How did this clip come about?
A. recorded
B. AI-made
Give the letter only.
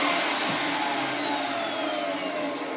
A